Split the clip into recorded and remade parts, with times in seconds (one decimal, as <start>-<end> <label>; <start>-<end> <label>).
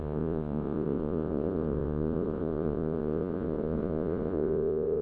0.0-5.0 remade